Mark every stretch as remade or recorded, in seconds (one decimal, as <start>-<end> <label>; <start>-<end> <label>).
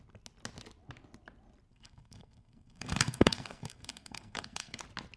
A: 0.0-1.7 recorded; 1.7-4.8 remade; 4.8-5.2 recorded